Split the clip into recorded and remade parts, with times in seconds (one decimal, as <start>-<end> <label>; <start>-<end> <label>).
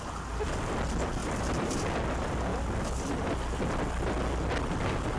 0.0-1.2 recorded; 1.2-1.8 remade; 1.8-5.2 recorded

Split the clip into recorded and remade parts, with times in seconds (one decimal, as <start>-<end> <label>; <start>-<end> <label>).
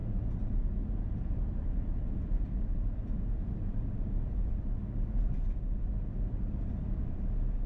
0.0-0.7 remade; 0.7-1.3 recorded; 1.3-5.9 remade; 5.9-7.7 recorded